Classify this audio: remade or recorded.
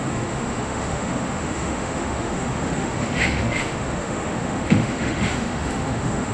remade